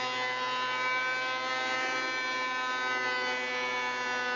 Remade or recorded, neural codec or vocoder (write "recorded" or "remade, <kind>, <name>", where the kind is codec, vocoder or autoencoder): recorded